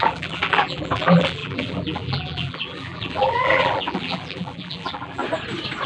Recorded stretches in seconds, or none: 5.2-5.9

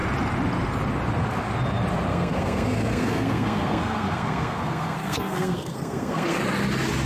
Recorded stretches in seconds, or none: 0.0-2.1; 6.4-7.1

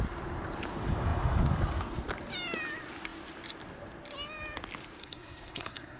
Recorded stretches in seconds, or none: 0.0-5.0